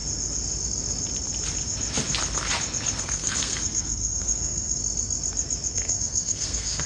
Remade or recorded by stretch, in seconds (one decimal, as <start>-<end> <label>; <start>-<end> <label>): 0.0-3.0 recorded; 3.0-4.8 remade; 4.8-5.7 recorded; 5.7-6.9 remade